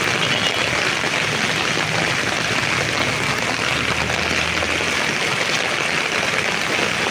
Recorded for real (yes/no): yes